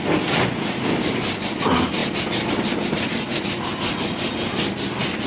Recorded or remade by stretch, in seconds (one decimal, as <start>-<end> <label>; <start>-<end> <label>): 0.0-5.3 recorded